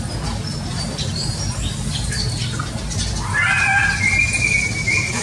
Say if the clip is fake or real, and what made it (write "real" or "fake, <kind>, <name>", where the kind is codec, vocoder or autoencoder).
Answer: real